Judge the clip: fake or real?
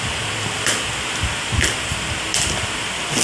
real